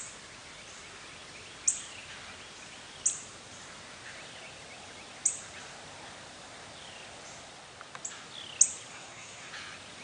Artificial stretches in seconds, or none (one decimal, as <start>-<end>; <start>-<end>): 8.9-9.5